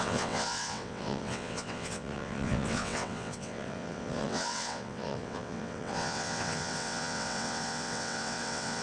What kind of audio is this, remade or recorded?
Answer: remade